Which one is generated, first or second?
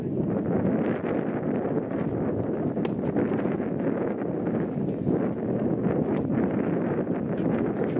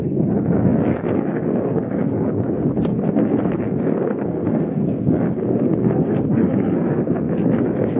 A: second